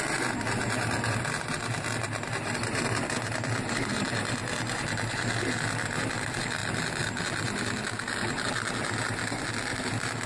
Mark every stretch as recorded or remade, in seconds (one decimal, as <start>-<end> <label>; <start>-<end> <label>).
0.0-10.3 recorded